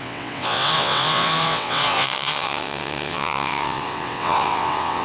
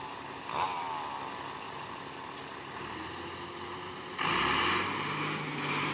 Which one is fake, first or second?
first